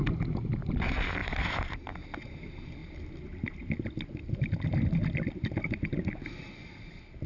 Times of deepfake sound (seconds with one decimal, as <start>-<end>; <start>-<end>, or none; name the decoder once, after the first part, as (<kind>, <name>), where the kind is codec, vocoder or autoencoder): none